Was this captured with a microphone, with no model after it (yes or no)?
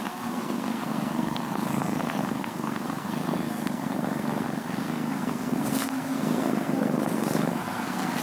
no